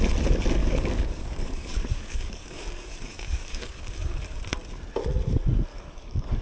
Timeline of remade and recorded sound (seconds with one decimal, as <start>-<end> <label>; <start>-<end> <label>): 0.0-0.6 recorded; 0.6-4.4 remade; 4.4-5.7 recorded; 5.7-6.4 remade